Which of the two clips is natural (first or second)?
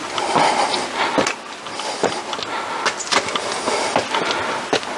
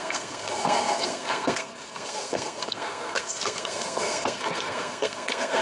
first